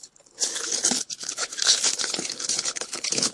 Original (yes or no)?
no